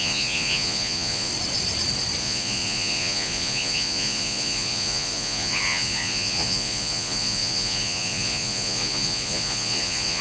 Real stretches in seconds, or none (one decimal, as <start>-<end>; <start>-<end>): 1.3-2.2